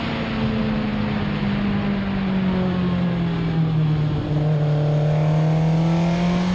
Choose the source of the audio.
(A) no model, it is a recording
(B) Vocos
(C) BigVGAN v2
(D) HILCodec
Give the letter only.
A